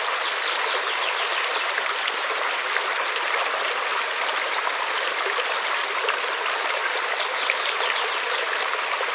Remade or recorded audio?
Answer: recorded